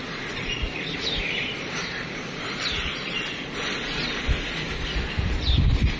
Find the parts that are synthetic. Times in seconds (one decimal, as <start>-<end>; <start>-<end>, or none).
0.0-3.6